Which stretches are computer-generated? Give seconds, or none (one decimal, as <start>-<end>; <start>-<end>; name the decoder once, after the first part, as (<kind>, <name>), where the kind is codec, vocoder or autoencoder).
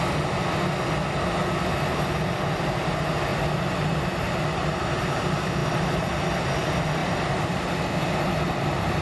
3.3-3.9 (vocoder, BigVGAN v2); 7.0-7.6